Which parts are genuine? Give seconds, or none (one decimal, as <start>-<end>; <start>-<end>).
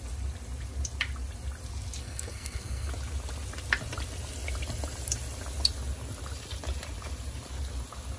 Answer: 0.0-2.0; 2.9-8.2